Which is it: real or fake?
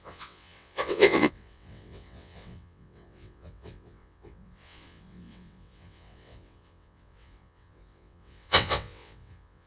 fake